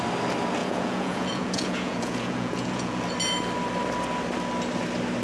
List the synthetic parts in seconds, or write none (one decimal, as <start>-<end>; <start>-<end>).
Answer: 0.6-3.0